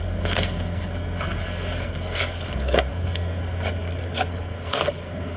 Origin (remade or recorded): remade